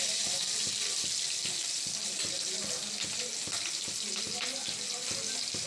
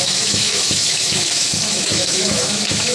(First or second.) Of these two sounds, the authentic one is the first